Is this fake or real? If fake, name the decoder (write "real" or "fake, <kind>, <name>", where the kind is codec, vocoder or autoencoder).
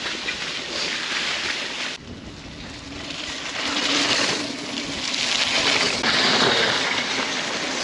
real